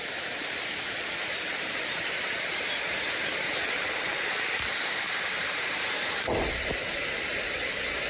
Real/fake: fake